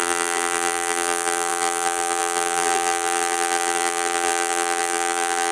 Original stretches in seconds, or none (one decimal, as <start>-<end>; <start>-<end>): none